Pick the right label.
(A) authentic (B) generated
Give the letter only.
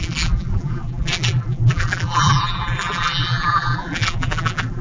B